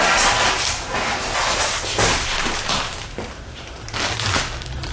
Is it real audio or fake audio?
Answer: real